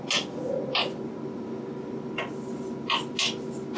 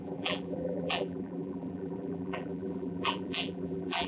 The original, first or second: first